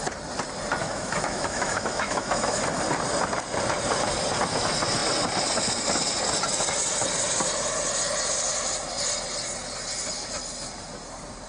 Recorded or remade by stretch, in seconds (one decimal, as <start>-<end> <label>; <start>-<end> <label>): 0.0-0.8 recorded; 0.8-2.6 remade; 2.6-11.5 recorded